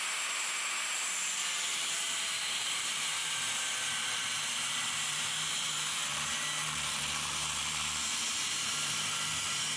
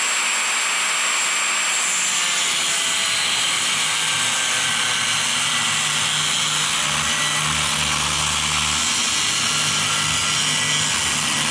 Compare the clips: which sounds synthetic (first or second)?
first